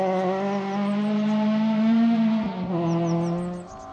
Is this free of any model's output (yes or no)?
yes